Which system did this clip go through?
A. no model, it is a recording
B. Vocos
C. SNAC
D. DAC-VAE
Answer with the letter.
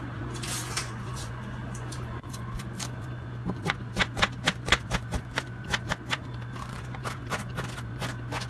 B